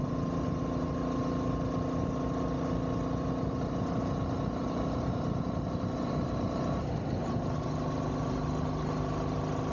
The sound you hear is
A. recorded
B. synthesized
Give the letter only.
A